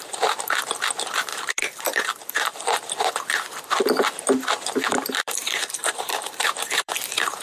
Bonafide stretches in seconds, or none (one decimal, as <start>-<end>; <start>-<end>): none